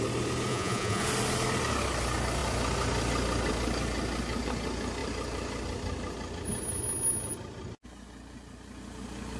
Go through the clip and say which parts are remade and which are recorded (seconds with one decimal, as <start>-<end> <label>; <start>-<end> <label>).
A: 0.0-0.5 recorded; 0.5-1.0 remade; 1.0-9.4 recorded